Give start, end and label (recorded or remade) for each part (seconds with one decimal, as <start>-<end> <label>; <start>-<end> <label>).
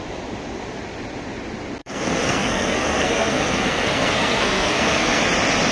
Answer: 0.0-1.8 recorded; 1.8-5.2 remade; 5.2-5.7 recorded